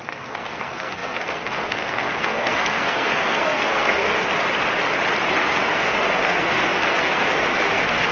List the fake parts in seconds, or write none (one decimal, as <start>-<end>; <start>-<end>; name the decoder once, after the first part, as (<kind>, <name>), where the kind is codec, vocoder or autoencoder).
0.0-4.2 (codec, SNAC); 5.3-8.1